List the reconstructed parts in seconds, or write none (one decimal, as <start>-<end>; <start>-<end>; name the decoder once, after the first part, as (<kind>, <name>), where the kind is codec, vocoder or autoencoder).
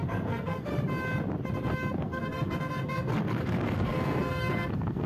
0.0-0.7 (codec, SNAC); 1.9-5.1